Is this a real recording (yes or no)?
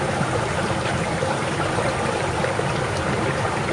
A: no